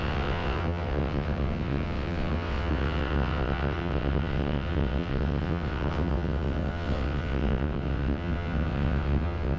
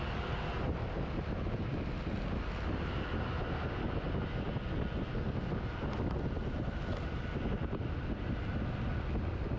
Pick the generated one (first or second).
first